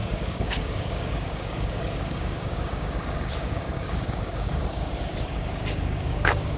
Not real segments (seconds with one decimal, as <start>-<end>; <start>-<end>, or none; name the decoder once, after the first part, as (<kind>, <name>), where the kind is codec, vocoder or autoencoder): 0.0-6.6 (codec, DAC)